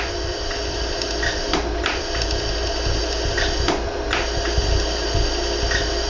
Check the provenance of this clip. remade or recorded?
recorded